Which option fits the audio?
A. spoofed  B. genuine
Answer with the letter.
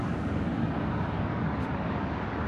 A